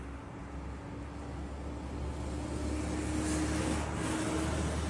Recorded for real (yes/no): yes